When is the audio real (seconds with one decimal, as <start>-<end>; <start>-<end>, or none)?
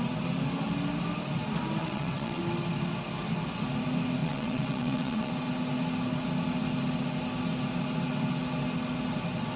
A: 0.0-1.8; 2.4-4.2; 5.3-9.6